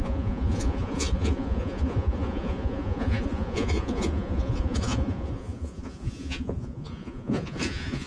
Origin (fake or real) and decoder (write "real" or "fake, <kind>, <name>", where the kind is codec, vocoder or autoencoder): fake, vocoder, Vocos